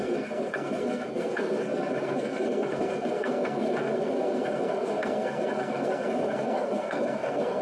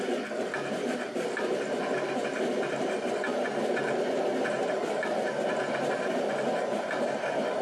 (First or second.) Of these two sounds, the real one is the second